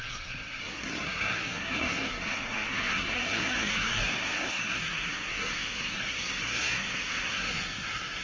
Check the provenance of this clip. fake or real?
fake